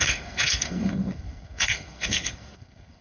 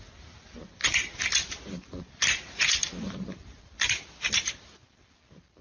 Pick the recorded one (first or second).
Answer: second